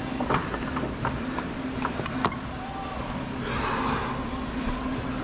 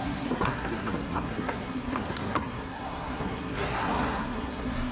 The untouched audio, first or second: first